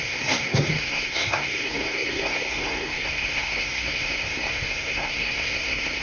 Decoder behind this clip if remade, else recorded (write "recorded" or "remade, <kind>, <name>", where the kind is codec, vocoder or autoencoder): remade, codec, SNAC